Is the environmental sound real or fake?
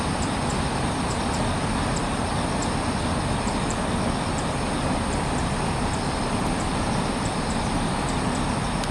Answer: real